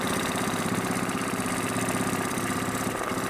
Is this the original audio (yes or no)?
no